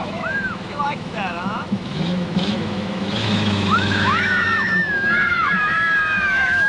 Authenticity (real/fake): fake